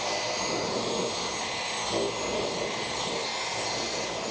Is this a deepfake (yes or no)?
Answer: no